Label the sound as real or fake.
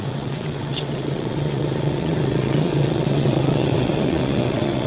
fake